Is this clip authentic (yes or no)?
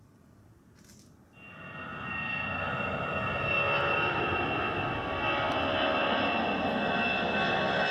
yes